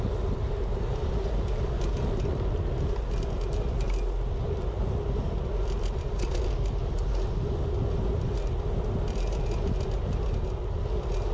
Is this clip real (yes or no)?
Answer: yes